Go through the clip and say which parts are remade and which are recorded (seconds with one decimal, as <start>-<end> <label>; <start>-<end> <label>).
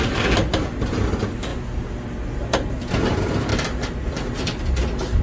0.0-3.5 recorded; 3.5-4.2 remade; 4.2-5.2 recorded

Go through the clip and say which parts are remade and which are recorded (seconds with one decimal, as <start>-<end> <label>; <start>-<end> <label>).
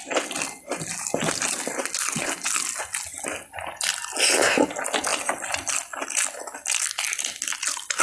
0.0-8.0 recorded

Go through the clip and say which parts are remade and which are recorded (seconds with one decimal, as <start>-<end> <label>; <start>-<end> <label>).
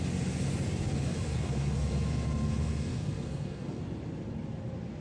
0.0-1.3 recorded; 1.3-3.8 remade; 3.8-5.0 recorded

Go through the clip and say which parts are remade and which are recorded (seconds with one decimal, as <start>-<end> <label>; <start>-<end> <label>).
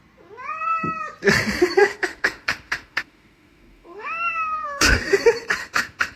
0.0-1.8 recorded; 1.8-5.0 remade; 5.0-5.6 recorded; 5.6-6.2 remade